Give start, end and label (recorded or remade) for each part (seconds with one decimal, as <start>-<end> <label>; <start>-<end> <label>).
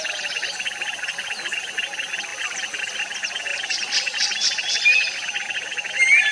0.0-2.3 recorded; 2.3-2.8 remade; 2.8-3.5 recorded; 3.5-4.8 remade; 4.8-6.3 recorded